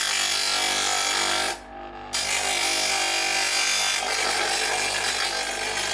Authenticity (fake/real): real